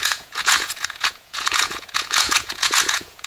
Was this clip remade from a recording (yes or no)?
yes